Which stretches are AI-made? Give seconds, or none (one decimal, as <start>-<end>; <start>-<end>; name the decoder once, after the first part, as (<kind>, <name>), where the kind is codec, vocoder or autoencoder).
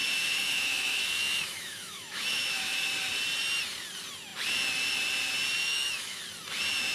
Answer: 0.0-2.9 (autoencoder, DAC-VAE); 5.6-6.2